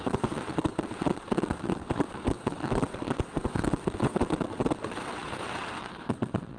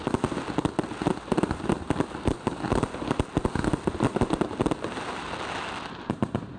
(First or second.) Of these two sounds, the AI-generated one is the first